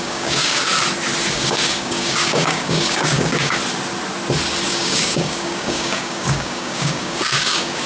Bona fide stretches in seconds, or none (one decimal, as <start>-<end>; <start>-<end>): 0.7-1.3; 3.6-4.7